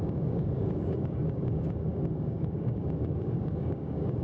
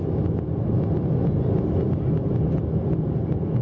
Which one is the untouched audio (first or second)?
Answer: second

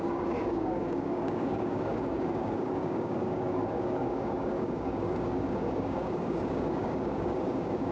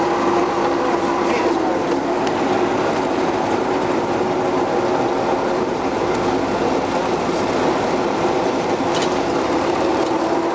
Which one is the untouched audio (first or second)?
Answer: second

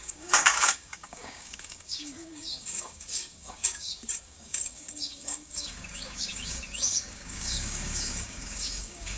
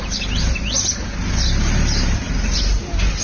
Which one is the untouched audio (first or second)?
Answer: second